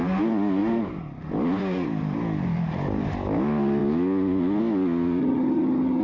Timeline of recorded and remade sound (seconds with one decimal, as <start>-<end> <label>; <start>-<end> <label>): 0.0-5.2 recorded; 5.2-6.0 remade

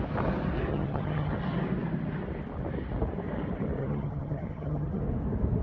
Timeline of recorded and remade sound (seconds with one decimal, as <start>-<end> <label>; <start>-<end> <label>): 0.0-0.7 recorded; 0.7-1.3 remade; 1.3-3.8 recorded; 3.8-5.0 remade; 5.0-5.6 recorded

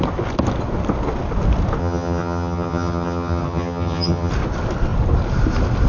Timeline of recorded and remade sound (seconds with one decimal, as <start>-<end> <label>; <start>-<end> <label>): 0.0-1.8 recorded; 1.8-4.3 remade; 4.3-5.9 recorded